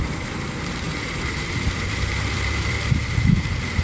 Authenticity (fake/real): fake